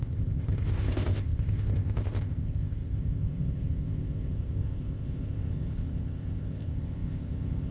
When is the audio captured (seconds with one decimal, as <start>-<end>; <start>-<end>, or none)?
none